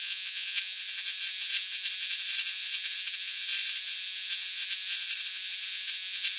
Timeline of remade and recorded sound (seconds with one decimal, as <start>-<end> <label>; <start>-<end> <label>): 0.0-6.4 remade